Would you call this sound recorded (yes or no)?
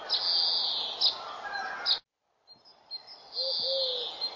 yes